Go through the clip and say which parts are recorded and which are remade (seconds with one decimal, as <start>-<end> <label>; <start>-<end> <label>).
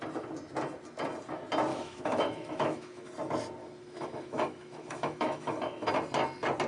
0.0-1.7 recorded; 1.7-3.1 remade; 3.1-3.6 recorded; 3.6-5.9 remade; 5.9-6.7 recorded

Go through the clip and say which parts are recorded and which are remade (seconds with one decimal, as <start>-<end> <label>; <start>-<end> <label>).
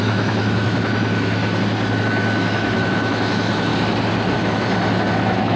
0.0-1.4 remade; 1.4-2.0 recorded; 2.0-3.7 remade; 3.7-4.3 recorded; 4.3-5.6 remade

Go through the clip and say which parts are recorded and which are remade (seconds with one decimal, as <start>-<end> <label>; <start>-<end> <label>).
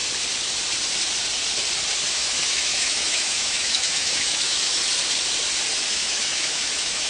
0.0-2.1 recorded; 2.1-4.7 remade; 4.7-5.9 recorded; 5.9-7.1 remade